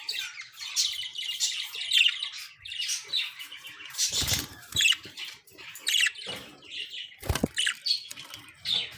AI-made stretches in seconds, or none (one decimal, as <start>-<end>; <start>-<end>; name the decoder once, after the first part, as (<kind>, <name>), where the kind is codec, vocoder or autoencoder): 1.1-2.0 (vocoder, BigVGAN v2); 2.9-6.9